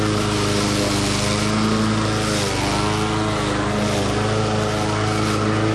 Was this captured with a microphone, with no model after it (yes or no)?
yes